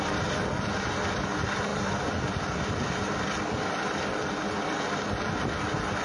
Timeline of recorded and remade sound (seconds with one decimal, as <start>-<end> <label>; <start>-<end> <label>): 0.0-6.0 recorded